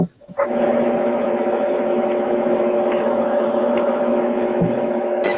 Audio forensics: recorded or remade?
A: remade